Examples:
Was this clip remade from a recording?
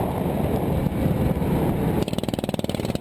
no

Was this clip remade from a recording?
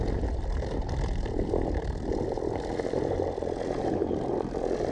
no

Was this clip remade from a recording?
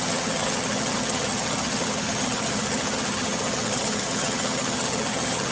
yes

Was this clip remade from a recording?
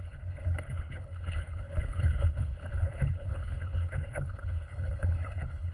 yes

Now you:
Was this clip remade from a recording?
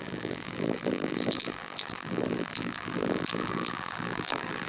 yes